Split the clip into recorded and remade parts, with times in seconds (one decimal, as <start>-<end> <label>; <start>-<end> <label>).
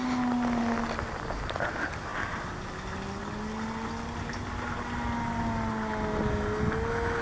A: 0.0-7.2 recorded